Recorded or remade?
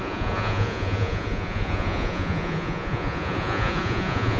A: remade